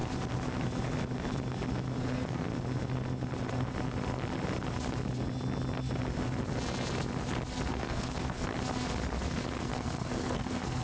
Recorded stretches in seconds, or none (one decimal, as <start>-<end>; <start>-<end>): 0.0-2.0; 2.5-7.7; 8.5-9.6